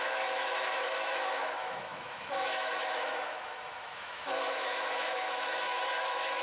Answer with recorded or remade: remade